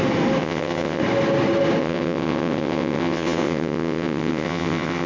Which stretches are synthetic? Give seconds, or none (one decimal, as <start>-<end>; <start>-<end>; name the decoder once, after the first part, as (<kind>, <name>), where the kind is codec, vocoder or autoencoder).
0.4-1.0 (vocoder, WaveNeXt); 1.8-5.1